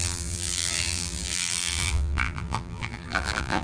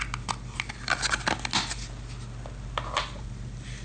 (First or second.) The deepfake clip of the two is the first